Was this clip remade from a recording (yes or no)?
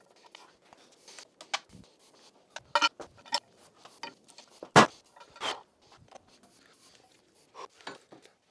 no